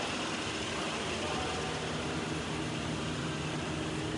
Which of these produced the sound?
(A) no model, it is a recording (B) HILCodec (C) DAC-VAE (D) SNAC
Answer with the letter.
A